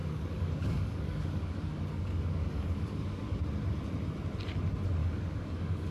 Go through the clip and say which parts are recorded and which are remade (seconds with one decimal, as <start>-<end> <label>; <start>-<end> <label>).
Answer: 0.0-3.4 remade; 3.4-5.0 recorded; 5.0-5.9 remade